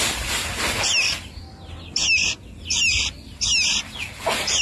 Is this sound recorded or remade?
recorded